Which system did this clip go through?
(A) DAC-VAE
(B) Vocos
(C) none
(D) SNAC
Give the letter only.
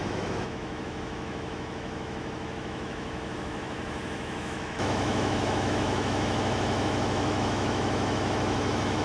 A